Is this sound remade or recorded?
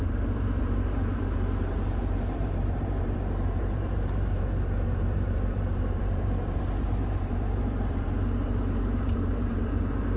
remade